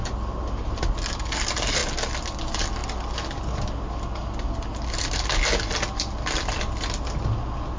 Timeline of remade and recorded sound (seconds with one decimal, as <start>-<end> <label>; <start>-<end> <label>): 0.0-7.8 recorded